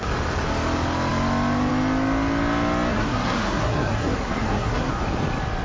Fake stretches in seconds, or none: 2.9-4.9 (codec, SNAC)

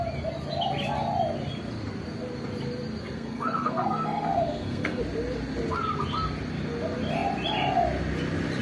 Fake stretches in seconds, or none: 3.0-5.0 (codec, SNAC)

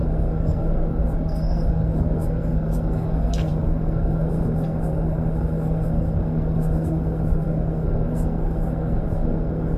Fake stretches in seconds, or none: 0.0-9.8 (codec, SNAC)

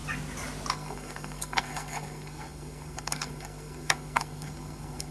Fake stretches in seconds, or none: 0.7-5.1 (codec, SNAC)

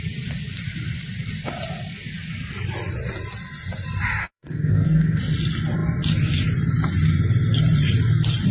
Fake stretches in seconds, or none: 4.2-5.2 (codec, SNAC)

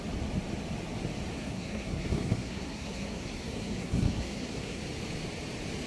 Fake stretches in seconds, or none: 1.3-4.8 (codec, SNAC)

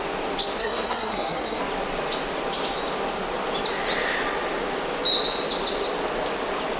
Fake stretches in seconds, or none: 0.6-1.6 (codec, SNAC)

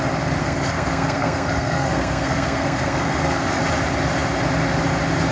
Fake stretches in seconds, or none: 0.4-3.6 (codec, SNAC)